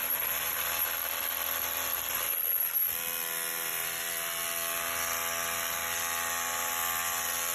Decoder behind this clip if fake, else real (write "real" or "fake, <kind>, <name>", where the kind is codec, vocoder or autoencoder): real